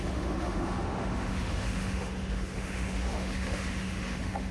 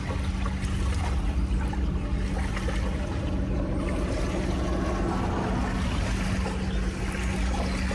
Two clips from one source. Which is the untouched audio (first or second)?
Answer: second